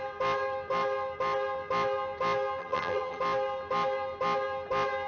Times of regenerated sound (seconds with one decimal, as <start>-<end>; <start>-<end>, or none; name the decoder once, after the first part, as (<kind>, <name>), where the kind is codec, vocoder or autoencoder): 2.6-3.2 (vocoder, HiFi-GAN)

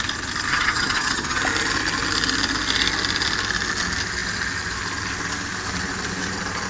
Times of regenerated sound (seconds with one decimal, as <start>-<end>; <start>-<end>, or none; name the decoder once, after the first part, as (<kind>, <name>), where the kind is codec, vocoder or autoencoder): 0.5-1.4 (vocoder, HiFi-GAN)

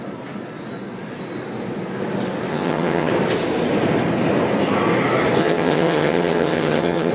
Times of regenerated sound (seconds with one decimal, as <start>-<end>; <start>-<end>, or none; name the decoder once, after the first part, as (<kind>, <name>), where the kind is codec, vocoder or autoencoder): 2.5-3.1 (vocoder, HiFi-GAN); 5.4-7.1

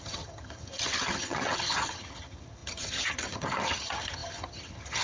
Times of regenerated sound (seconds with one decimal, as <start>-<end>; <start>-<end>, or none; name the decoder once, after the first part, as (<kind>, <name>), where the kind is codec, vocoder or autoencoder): 0.0-5.0 (vocoder, HiFi-GAN)